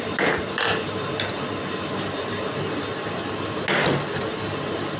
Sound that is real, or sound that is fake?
real